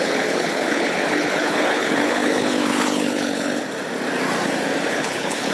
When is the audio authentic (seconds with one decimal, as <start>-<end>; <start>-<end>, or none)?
3.6-4.9